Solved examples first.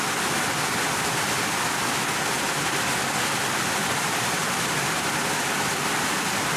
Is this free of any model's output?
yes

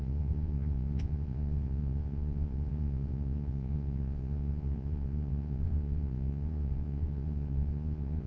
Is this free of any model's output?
no